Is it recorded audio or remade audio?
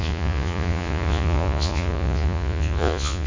remade